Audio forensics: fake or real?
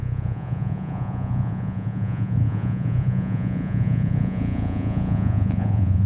fake